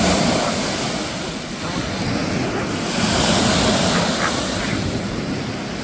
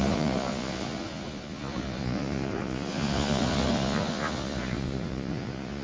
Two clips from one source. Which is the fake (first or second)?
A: second